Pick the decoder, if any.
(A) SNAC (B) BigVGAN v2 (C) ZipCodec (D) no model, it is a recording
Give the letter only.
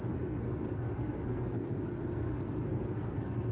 A